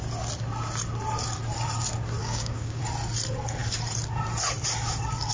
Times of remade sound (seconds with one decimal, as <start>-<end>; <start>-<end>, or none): 2.2-2.8